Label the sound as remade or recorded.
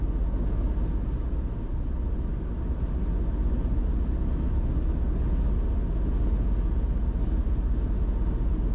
recorded